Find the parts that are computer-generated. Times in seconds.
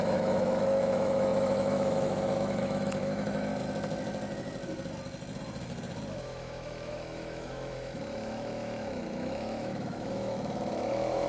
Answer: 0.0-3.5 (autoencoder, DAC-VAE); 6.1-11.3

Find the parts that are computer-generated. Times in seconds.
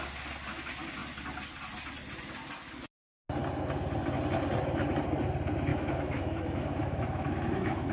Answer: 5.7-7.9 (autoencoder, DAC-VAE)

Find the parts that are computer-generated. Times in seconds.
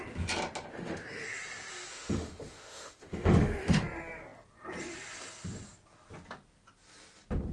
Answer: 0.7-1.2 (autoencoder, DAC-VAE); 1.9-3.8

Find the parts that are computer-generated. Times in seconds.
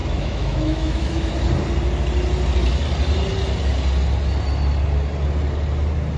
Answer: 0.0-1.3 (autoencoder, DAC-VAE)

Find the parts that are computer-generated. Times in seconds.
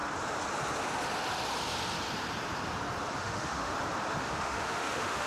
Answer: 3.2-3.7 (autoencoder, DAC-VAE); 4.2-5.3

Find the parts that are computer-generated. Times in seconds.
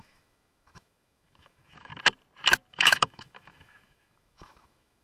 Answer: 0.0-1.9 (autoencoder, DAC-VAE); 2.7-5.0